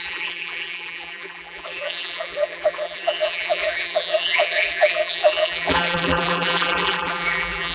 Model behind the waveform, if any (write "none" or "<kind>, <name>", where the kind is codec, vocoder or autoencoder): vocoder, BigVGAN v2